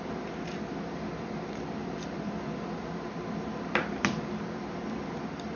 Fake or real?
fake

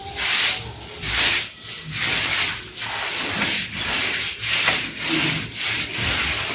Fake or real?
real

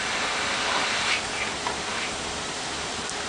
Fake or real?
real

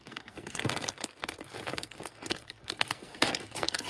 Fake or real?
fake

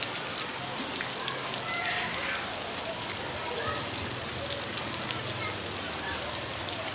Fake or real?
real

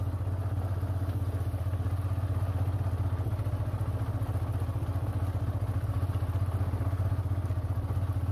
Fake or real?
real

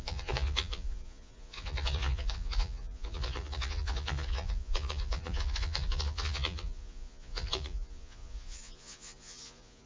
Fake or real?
fake